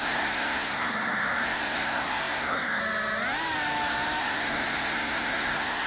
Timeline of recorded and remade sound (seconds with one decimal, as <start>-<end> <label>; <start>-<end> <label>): 0.0-2.8 remade; 2.8-4.2 recorded; 4.2-5.9 remade